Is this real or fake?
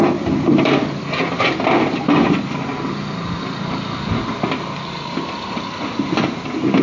real